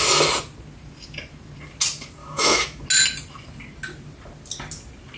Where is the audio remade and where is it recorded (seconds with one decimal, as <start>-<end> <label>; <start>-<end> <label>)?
0.0-2.2 recorded; 2.2-2.8 remade; 2.8-5.2 recorded